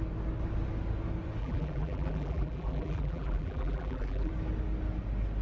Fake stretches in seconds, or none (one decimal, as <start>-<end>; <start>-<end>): 1.4-4.3